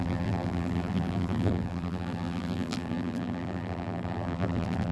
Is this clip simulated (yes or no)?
yes